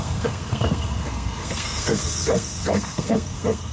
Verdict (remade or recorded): remade